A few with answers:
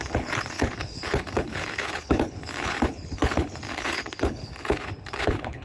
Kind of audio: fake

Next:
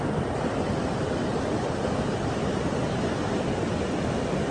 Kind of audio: real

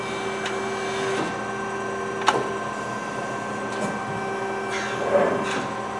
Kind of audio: real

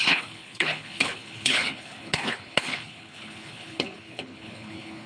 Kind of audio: fake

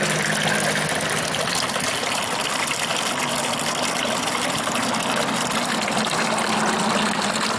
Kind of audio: real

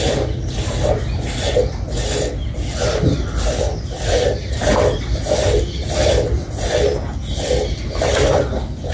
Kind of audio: real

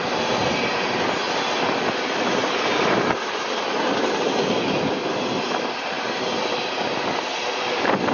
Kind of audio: real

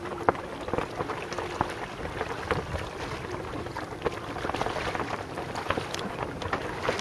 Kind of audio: real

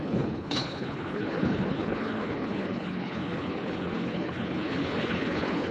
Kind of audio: fake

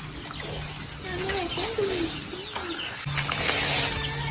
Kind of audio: real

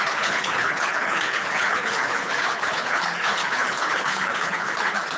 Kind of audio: fake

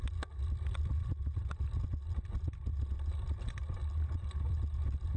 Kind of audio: real